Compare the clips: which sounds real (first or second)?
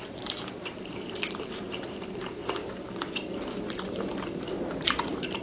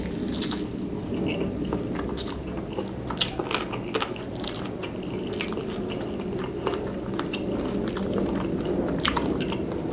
second